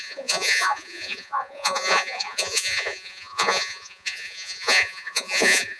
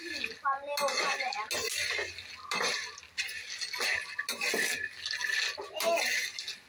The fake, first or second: first